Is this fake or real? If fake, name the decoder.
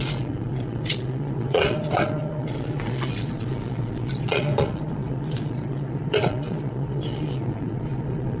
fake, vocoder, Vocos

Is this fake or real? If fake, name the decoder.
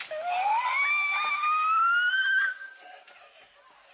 real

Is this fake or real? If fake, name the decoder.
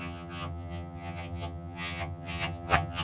fake, vocoder, HiFi-GAN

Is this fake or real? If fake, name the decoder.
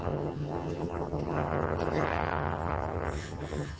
fake, vocoder, HiFi-GAN